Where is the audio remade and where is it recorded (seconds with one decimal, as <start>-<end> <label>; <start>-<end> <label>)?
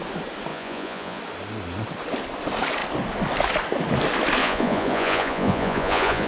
0.0-0.5 recorded; 0.5-1.2 remade; 1.2-4.4 recorded; 4.4-6.3 remade